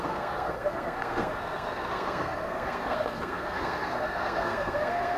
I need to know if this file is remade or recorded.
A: remade